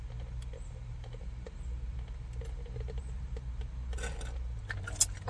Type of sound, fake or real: real